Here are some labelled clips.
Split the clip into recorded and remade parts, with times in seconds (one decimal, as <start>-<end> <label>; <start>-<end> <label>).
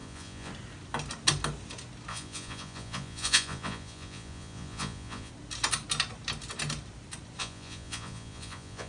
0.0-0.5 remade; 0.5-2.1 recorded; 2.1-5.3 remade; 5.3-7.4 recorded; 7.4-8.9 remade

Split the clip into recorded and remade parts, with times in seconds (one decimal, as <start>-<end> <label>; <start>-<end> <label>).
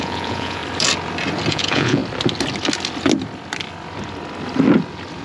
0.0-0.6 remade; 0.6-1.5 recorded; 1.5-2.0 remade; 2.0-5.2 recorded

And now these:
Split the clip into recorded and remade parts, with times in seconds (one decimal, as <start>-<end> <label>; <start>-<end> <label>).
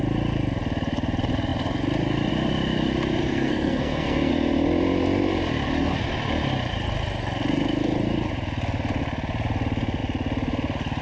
0.0-3.2 recorded; 3.2-4.3 remade; 4.3-11.0 recorded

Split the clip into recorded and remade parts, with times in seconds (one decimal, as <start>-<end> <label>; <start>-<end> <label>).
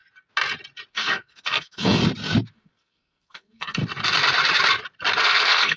0.0-0.9 recorded; 0.9-2.0 remade; 2.0-2.5 recorded; 2.5-3.8 remade; 3.8-5.2 recorded; 5.2-5.8 remade